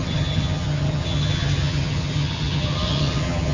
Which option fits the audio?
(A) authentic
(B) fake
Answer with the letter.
B